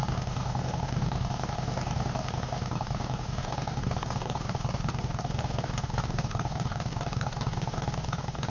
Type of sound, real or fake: fake